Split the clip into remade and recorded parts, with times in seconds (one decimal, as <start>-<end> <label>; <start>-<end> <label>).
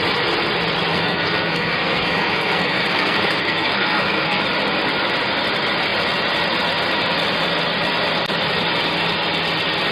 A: 0.0-0.9 recorded; 0.9-4.4 remade; 4.4-9.9 recorded